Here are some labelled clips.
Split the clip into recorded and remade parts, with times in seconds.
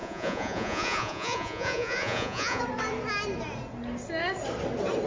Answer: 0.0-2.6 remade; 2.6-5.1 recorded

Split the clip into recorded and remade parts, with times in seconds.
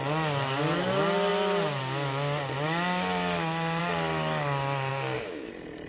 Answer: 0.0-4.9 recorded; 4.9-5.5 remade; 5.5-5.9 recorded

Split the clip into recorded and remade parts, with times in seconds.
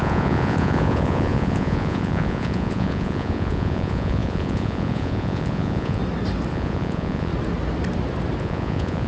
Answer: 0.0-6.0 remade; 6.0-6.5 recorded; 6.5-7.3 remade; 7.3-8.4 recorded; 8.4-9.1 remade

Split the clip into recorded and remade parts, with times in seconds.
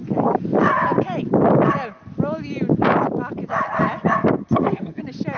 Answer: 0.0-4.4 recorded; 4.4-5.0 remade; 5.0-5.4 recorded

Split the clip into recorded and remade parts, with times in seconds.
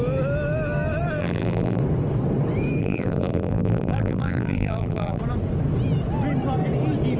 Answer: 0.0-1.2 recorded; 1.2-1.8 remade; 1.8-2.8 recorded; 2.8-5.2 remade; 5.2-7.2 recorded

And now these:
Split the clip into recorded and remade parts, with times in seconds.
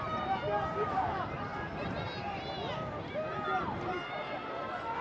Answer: 0.0-5.0 recorded